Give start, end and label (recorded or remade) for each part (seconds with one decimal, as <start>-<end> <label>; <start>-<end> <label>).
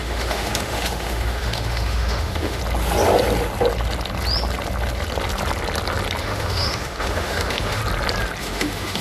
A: 0.0-2.6 remade; 2.6-6.2 recorded; 6.2-7.8 remade; 7.8-8.4 recorded; 8.4-9.0 remade